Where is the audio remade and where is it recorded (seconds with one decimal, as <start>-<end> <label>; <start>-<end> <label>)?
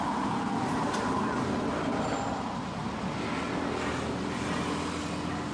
0.0-5.5 recorded